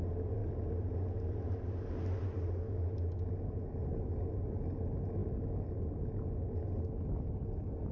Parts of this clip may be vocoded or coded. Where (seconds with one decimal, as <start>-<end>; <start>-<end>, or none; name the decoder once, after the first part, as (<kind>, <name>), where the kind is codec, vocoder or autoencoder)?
none